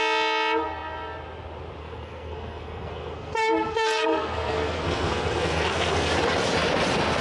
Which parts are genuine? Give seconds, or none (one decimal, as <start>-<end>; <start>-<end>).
0.0-1.8; 6.1-7.2